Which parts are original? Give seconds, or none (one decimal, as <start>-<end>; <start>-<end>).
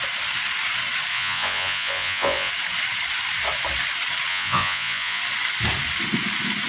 0.0-1.1; 2.5-4.3; 5.2-6.7